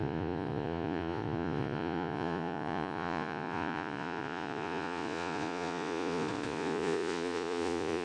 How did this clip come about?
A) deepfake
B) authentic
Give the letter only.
A